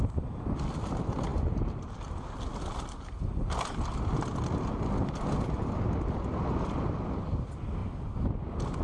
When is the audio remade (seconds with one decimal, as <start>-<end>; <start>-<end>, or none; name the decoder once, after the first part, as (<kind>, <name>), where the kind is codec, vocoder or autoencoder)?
none